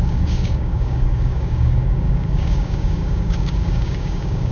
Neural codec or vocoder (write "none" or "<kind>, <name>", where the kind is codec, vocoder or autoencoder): codec, DAC